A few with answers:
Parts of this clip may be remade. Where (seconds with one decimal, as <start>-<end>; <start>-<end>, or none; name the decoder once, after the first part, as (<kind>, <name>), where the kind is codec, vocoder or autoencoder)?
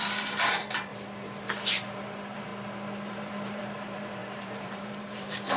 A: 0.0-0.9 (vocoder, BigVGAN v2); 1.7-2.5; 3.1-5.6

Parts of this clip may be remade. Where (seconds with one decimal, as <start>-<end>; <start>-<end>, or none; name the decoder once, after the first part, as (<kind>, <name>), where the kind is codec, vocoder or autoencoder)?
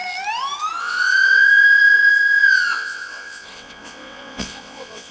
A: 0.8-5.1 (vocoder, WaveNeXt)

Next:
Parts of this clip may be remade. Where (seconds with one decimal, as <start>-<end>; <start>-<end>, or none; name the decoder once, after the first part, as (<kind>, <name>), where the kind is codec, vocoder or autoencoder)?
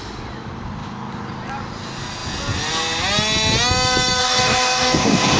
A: 4.2-5.4 (codec, DAC)